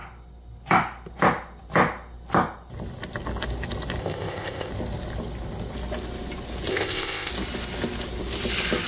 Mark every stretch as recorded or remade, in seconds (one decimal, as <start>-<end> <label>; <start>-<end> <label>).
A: 0.0-4.0 recorded; 4.0-4.7 remade; 4.7-6.7 recorded; 6.7-7.3 remade; 7.3-8.9 recorded